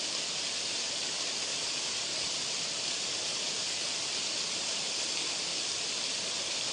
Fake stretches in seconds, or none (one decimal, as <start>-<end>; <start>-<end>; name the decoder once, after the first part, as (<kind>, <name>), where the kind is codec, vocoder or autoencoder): none